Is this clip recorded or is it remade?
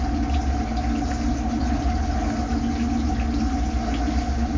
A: recorded